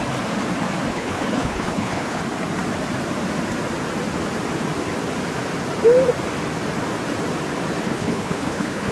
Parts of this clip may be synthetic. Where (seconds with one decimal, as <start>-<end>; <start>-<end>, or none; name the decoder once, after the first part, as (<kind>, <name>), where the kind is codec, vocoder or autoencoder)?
0.9-2.2 (codec, HILCodec); 7.8-8.9